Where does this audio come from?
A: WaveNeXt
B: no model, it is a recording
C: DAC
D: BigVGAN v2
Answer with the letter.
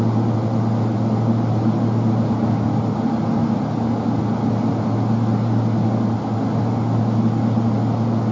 B